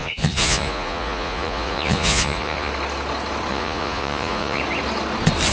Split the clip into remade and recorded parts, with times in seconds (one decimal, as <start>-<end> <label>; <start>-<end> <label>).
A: 0.0-2.7 remade; 2.7-3.5 recorded; 3.5-4.6 remade; 4.6-5.5 recorded